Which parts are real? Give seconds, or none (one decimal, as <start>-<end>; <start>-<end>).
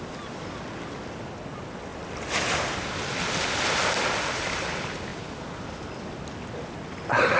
0.0-7.4